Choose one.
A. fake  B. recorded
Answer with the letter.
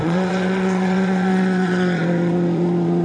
A